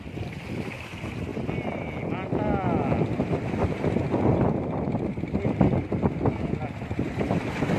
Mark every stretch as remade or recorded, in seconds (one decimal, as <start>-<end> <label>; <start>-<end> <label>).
0.0-7.8 recorded